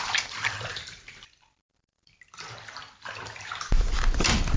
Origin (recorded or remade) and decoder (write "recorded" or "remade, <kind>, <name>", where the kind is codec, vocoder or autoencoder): remade, vocoder, BigVGAN v2